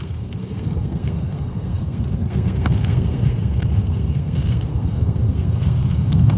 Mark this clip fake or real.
fake